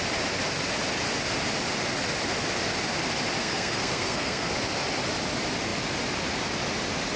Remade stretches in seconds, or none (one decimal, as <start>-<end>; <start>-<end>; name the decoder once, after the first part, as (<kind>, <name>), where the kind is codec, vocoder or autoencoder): 3.4-4.5 (codec, SNAC)